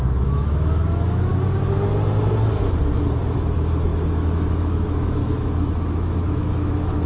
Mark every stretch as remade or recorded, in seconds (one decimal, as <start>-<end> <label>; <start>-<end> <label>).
0.0-1.3 remade; 1.3-3.2 recorded; 3.2-7.1 remade